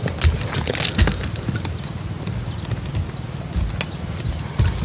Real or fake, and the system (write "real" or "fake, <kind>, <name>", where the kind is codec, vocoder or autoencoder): real